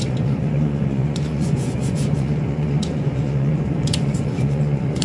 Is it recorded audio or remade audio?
remade